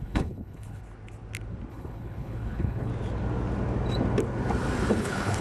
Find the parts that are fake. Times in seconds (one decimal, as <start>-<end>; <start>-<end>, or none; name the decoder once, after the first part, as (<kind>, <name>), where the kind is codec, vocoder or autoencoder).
0.0-0.8 (codec, HILCodec); 1.7-2.9; 4.9-5.4